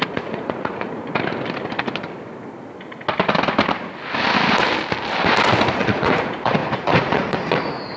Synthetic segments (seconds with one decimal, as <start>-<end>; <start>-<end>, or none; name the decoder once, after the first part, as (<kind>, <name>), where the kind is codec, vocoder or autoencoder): 0.0-1.0 (vocoder, Vocos); 5.7-8.0